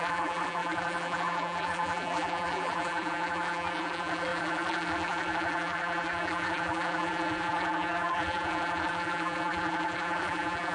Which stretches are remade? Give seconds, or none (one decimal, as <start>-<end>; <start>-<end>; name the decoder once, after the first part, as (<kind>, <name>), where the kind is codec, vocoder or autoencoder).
0.0-10.7 (vocoder, BigVGAN v2)